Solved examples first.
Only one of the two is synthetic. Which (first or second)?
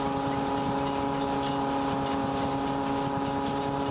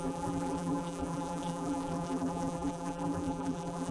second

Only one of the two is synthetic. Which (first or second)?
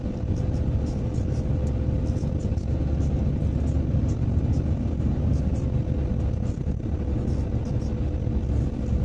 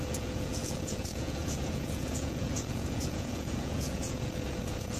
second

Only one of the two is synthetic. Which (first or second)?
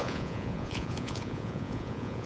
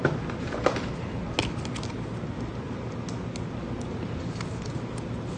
first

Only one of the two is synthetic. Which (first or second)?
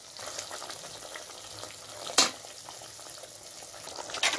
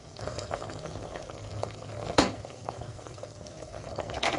second